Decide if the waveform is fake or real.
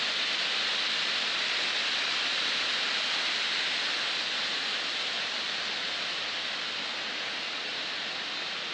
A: real